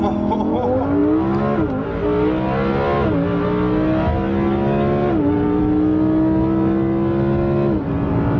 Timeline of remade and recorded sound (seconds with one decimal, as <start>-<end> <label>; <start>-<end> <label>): 0.0-8.4 recorded